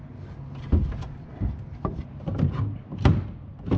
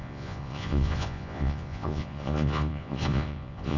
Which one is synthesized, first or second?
second